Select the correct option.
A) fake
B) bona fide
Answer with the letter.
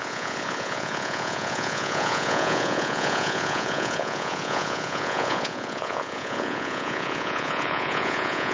A